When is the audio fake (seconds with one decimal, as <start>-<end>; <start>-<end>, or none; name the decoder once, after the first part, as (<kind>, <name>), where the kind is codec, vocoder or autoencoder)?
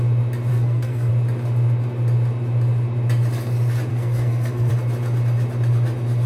0.5-1.1 (codec, SNAC); 3.9-4.7